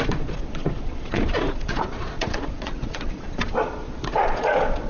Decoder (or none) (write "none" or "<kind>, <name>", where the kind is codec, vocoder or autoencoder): vocoder, Vocos